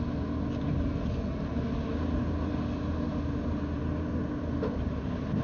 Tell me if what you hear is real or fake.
real